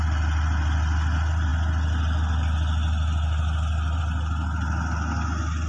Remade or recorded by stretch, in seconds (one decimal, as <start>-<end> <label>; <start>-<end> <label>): 0.0-5.7 recorded